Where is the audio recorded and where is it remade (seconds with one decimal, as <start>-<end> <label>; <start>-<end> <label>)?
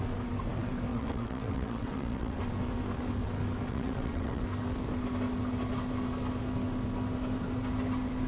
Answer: 0.0-0.9 recorded; 0.9-2.4 remade; 2.4-3.7 recorded; 3.7-4.4 remade; 4.4-8.3 recorded